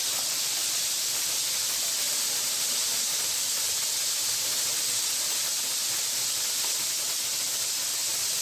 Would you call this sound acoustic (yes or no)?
yes